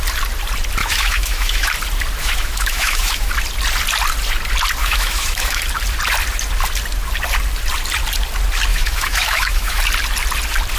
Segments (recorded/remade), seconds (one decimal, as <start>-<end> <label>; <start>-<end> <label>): 0.0-0.8 recorded; 0.8-1.7 remade; 1.7-2.2 recorded; 2.2-3.3 remade; 3.3-4.8 recorded; 4.8-5.6 remade; 5.6-8.7 recorded; 8.7-9.8 remade; 9.8-10.8 recorded